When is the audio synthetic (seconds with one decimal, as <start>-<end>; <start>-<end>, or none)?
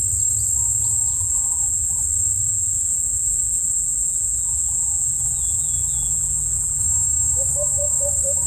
1.1-2.0; 2.4-6.8